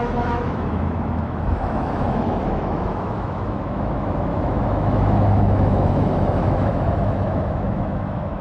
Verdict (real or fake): fake